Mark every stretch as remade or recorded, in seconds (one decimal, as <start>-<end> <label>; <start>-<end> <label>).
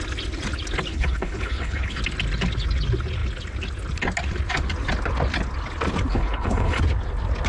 0.0-0.9 recorded; 0.9-2.0 remade; 2.0-6.1 recorded; 6.1-6.8 remade; 6.8-7.5 recorded